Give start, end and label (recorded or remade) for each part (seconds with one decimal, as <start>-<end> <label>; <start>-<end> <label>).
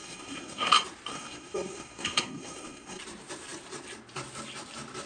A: 0.0-0.7 remade; 0.7-1.1 recorded; 1.1-3.0 remade; 3.0-5.1 recorded